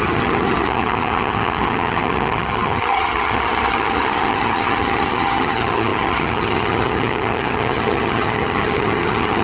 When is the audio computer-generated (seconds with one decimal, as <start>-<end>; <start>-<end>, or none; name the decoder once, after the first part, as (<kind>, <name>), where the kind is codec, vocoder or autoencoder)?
0.0-9.4 (vocoder, HiFi-GAN)

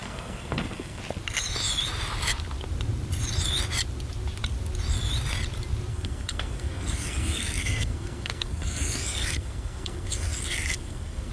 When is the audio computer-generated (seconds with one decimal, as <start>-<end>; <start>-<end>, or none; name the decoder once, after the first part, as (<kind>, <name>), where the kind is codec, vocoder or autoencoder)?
0.0-1.0 (codec, SNAC); 5.9-11.3

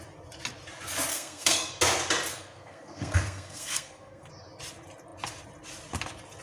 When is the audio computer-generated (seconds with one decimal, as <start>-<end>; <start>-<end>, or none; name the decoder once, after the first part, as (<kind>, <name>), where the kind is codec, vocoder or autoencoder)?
1.1-1.7 (codec, SNAC); 2.3-4.3

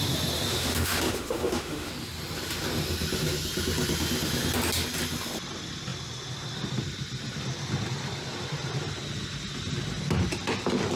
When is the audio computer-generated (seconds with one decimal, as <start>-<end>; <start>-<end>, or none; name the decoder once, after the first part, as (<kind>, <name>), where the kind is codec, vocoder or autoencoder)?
0.5-1.9 (autoencoder, DAC-VAE)

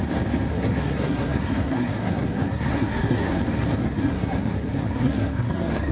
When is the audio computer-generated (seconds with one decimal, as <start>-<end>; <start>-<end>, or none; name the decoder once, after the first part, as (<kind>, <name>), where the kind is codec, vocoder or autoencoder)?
0.5-3.4 (codec, SNAC); 3.8-5.9

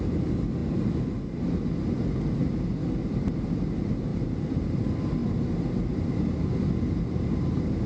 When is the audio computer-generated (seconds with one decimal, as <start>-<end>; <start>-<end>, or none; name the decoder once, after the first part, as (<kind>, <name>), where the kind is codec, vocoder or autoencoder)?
0.6-1.6 (vocoder, BigVGAN v2); 4.1-4.8; 5.2-6.0